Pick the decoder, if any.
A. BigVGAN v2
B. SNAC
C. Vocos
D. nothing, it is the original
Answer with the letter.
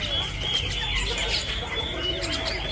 D